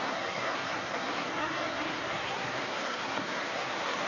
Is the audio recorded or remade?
remade